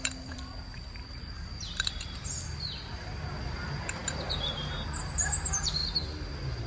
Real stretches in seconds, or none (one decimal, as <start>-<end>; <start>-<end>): 5.8-6.7